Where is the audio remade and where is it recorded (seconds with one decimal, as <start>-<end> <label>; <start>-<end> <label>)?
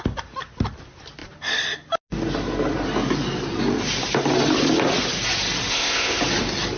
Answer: 0.0-5.7 recorded; 5.7-6.2 remade; 6.2-6.8 recorded